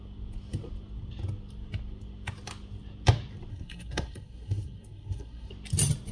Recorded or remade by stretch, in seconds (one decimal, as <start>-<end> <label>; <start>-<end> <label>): 0.0-3.5 recorded; 3.5-5.5 remade; 5.5-6.1 recorded